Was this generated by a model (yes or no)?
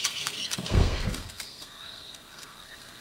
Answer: yes